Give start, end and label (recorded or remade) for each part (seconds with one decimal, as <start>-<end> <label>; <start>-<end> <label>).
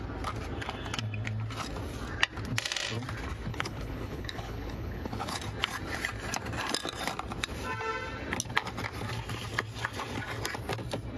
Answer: 0.0-3.5 recorded; 3.5-5.4 remade; 5.4-11.2 recorded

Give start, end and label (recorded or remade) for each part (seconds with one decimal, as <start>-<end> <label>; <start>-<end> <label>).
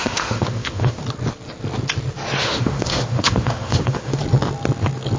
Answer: 0.0-1.0 remade; 1.0-2.4 recorded; 2.4-4.2 remade; 4.2-5.2 recorded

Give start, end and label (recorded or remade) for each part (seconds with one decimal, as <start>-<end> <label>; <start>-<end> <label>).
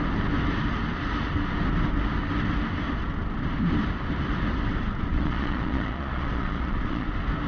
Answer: 0.0-5.1 recorded; 5.1-7.1 remade; 7.1-7.5 recorded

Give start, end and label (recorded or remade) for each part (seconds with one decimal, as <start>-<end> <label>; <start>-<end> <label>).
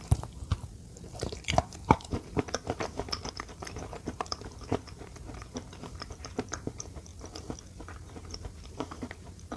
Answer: 0.0-0.5 remade; 0.5-1.3 recorded; 1.3-7.1 remade; 7.1-8.2 recorded; 8.2-9.6 remade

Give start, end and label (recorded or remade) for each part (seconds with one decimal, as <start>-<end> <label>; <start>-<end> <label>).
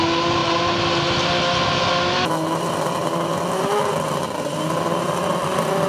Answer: 0.0-5.9 recorded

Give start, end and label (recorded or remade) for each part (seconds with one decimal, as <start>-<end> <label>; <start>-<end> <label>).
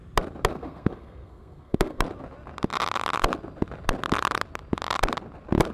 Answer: 0.0-0.5 recorded; 0.5-2.0 remade; 2.0-5.7 recorded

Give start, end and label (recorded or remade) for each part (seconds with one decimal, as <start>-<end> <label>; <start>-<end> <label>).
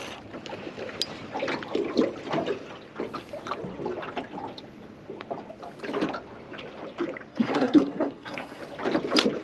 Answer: 0.0-7.3 recorded; 7.3-8.6 remade; 8.6-9.4 recorded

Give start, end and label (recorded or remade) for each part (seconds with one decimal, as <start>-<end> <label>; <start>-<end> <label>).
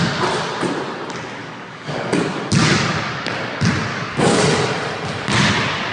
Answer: 0.0-1.4 recorded; 1.4-2.4 remade; 2.4-3.9 recorded; 3.9-4.4 remade; 4.4-5.9 recorded